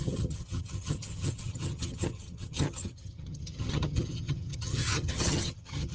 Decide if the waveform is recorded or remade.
remade